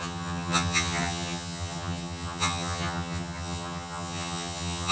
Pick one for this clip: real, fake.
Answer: fake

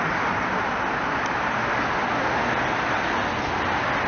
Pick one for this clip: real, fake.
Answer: real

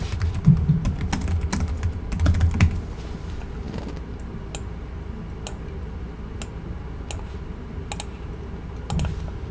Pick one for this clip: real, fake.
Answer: real